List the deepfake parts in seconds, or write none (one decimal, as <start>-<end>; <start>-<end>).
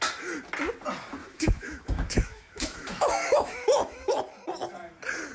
1.2-4.1